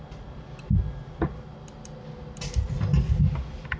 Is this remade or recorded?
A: recorded